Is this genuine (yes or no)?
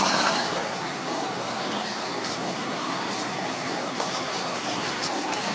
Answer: no